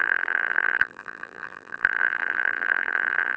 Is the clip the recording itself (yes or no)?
no